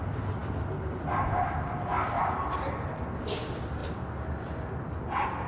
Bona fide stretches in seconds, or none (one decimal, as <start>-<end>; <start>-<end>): 0.0-5.5